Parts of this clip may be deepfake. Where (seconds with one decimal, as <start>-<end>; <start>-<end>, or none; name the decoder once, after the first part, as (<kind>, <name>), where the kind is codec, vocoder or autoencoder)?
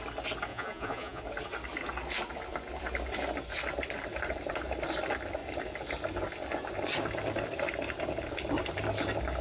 0.5-1.2 (vocoder, Vocos)